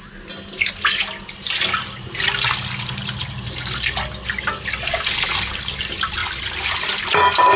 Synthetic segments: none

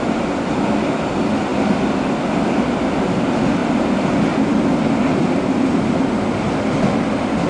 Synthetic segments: none

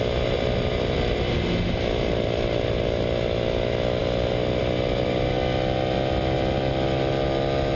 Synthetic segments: none

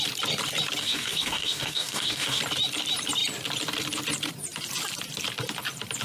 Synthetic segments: 0.8-2.4